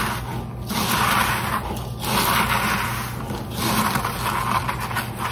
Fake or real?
real